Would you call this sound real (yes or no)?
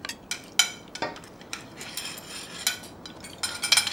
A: yes